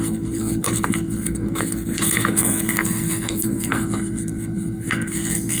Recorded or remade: remade